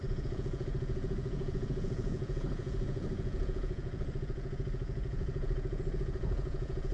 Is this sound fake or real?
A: fake